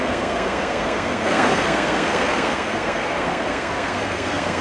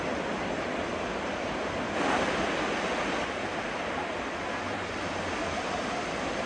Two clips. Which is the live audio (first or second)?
second